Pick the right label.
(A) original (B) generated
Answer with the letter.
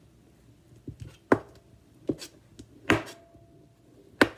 A